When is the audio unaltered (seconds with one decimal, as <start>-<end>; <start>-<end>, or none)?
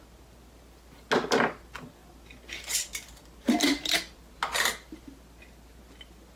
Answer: 0.0-6.4